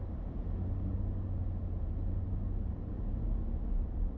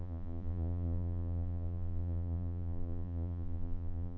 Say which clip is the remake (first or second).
second